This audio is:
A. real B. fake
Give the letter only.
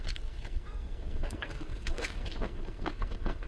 B